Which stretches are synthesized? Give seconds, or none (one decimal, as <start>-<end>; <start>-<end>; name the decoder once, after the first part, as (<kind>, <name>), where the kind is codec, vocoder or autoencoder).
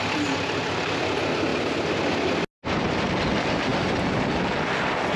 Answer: none